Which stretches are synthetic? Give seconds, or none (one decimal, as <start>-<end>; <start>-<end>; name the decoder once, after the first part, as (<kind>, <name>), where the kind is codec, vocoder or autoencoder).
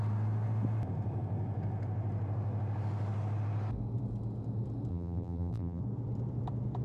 4.9-5.8 (vocoder, BigVGAN v2)